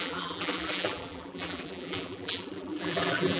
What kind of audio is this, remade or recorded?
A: remade